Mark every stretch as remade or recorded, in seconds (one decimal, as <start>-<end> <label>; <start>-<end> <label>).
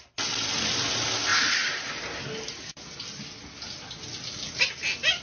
0.0-1.3 recorded; 1.3-2.2 remade; 2.2-5.2 recorded